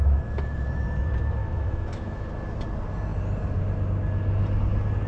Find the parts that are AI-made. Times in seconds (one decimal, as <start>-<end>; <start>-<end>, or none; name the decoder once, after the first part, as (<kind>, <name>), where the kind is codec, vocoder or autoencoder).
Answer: 1.4-2.3 (autoencoder, DAC-VAE)